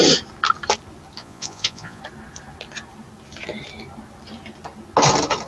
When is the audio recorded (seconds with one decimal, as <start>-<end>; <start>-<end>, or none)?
0.0-1.2; 2.0-5.5